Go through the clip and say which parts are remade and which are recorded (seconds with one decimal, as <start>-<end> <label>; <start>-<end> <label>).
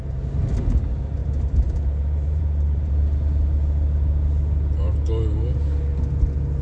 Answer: 0.0-1.2 recorded; 1.2-2.9 remade; 2.9-6.6 recorded